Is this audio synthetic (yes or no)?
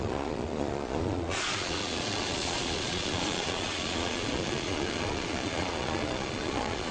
yes